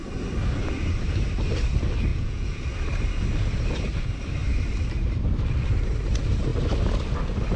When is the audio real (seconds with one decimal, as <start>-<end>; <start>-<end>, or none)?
0.0-2.1; 2.6-7.6